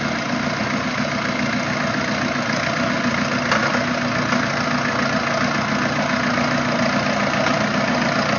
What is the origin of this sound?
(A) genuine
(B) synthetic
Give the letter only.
A